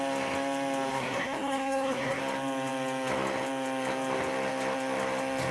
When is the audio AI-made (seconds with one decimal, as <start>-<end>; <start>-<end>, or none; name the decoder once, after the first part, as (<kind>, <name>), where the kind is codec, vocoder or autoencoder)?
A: 0.9-2.2 (codec, SNAC)